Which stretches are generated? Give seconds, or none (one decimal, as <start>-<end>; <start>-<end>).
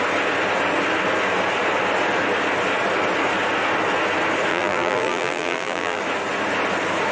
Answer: 4.5-6.0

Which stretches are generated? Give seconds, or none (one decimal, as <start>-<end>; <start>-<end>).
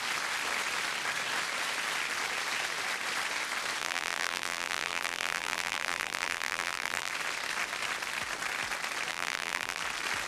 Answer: 3.8-7.1; 9.1-9.8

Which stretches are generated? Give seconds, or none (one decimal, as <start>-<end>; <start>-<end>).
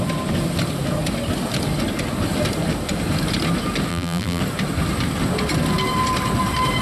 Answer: 3.9-4.4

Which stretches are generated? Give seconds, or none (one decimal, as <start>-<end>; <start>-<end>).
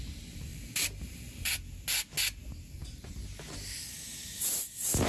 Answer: 0.5-1.5; 2.8-3.5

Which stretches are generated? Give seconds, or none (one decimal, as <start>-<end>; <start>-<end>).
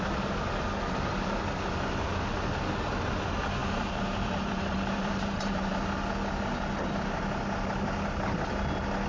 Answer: 3.6-5.7